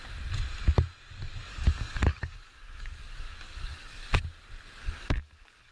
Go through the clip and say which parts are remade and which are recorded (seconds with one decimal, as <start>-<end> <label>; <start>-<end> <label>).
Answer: 0.0-1.5 recorded; 1.5-4.1 remade; 4.1-4.8 recorded; 4.8-5.7 remade

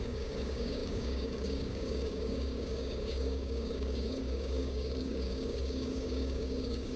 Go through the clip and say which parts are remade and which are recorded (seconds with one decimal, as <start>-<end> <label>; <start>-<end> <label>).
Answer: 0.0-7.0 remade

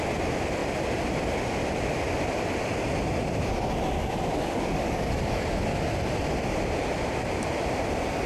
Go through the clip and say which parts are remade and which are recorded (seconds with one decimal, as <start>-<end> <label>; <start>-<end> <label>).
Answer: 0.0-4.0 recorded; 4.0-5.4 remade; 5.4-8.3 recorded

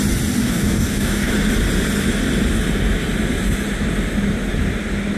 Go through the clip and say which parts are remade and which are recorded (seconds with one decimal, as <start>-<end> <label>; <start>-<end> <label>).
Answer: 0.0-0.4 recorded; 0.4-1.3 remade; 1.3-5.2 recorded

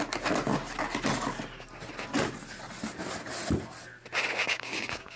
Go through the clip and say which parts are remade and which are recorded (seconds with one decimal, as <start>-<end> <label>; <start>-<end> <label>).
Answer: 0.0-4.4 recorded; 4.4-5.2 remade

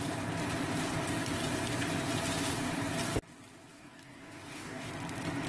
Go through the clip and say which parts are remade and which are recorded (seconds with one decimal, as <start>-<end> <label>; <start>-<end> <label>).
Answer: 0.0-3.7 recorded; 3.7-4.9 remade; 4.9-5.5 recorded

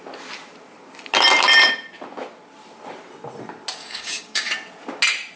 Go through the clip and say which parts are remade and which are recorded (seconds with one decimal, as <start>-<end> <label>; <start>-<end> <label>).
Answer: 0.0-3.8 recorded; 3.8-4.5 remade; 4.5-5.4 recorded

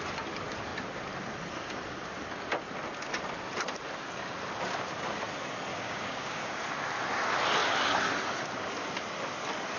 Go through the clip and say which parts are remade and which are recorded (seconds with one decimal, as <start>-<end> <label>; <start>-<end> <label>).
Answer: 0.0-5.7 recorded; 5.7-6.6 remade; 6.6-9.8 recorded